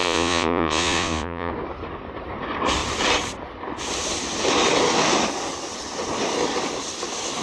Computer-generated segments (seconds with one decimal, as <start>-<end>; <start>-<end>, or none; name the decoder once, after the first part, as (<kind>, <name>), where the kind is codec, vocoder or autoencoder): 0.0-1.5 (vocoder, Vocos)